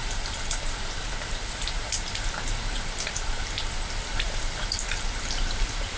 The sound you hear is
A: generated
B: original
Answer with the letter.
A